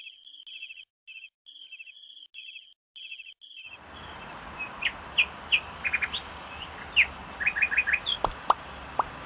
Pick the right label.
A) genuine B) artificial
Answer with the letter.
A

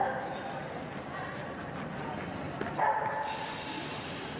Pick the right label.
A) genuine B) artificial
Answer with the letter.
B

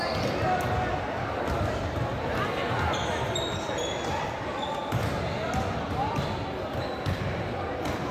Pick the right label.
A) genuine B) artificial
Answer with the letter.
A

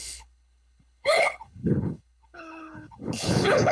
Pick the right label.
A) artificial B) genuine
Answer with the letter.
A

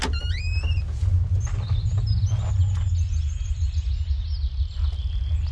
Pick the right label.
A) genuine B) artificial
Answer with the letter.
A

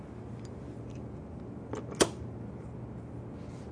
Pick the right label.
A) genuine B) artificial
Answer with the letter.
A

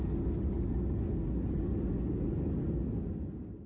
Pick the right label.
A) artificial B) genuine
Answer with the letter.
B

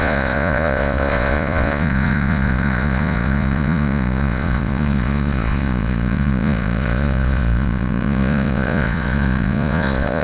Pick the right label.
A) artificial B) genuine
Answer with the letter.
A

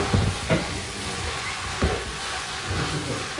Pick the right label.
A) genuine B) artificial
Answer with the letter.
B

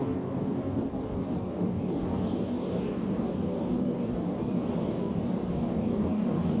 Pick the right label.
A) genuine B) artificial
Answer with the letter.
B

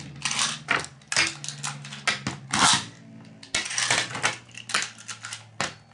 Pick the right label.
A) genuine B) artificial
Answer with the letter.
A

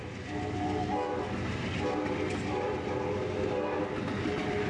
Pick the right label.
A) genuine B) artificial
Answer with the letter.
A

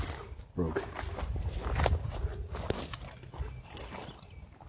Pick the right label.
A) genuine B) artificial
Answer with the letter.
A